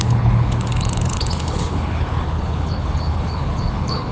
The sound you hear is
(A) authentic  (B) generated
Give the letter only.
B